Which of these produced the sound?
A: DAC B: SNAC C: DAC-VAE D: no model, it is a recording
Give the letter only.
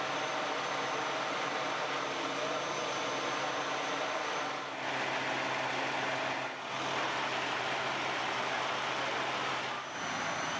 D